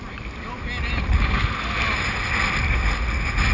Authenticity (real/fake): real